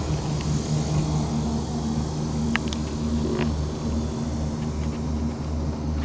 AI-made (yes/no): no